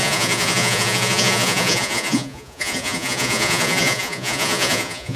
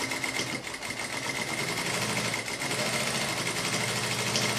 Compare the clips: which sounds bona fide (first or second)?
second